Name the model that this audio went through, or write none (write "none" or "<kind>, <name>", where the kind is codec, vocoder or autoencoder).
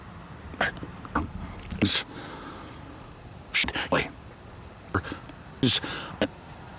none